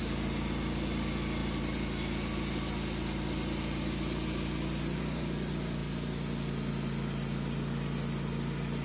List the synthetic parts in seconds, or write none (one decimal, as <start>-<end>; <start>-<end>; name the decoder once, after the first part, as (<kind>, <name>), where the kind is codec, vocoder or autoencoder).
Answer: none